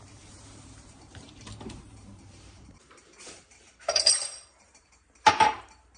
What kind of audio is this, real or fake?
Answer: fake